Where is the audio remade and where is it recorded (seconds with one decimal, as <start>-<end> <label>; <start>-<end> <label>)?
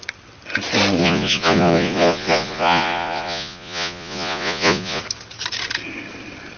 0.0-1.0 recorded; 1.0-5.0 remade; 5.0-6.6 recorded